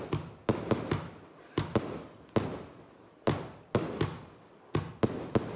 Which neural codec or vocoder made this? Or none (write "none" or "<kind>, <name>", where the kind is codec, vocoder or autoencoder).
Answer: none